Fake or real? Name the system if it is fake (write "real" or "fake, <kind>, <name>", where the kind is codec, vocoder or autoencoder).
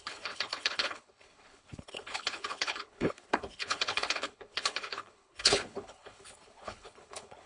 fake, codec, HILCodec